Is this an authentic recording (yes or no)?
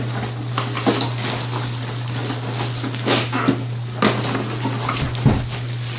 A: yes